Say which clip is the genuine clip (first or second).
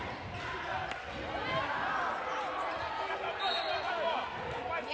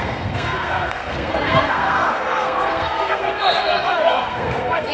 first